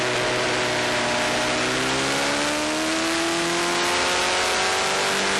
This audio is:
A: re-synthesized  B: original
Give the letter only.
B